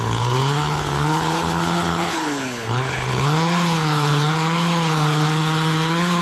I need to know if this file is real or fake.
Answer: fake